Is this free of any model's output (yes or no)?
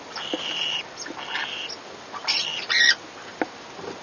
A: yes